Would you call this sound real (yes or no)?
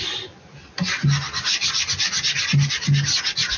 yes